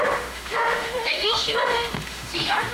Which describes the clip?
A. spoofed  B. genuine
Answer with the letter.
A